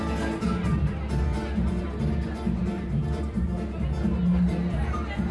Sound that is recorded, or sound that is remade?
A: recorded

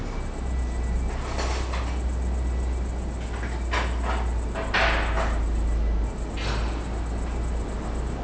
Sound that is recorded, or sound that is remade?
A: recorded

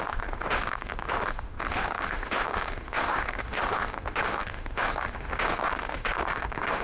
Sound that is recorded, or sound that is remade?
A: remade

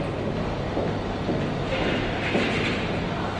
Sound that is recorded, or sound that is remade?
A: recorded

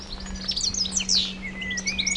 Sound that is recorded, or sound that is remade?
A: recorded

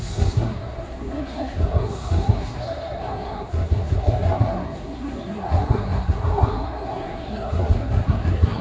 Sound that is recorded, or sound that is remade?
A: remade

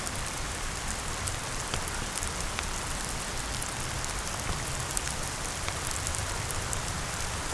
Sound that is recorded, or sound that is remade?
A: remade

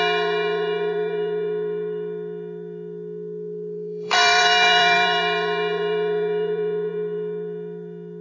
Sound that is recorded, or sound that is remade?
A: remade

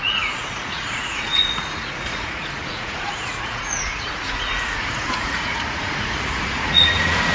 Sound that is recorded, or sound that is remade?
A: remade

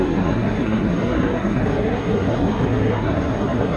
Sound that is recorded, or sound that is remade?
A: remade